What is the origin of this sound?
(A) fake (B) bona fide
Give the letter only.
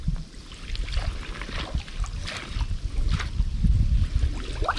B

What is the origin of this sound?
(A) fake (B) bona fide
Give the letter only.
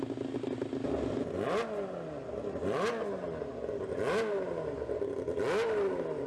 B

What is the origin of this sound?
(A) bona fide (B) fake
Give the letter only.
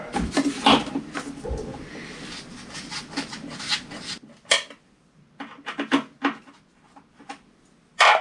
A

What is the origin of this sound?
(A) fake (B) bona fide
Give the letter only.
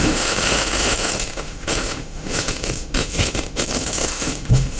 A